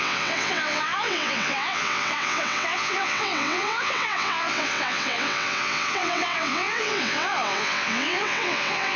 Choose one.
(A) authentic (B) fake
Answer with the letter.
B